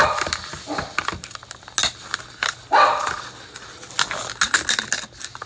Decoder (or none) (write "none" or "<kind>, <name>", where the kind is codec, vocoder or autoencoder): none